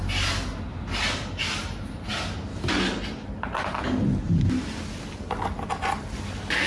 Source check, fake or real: real